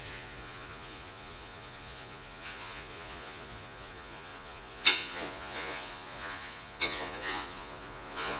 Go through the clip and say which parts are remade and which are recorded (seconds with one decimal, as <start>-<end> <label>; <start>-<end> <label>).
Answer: 0.0-8.4 remade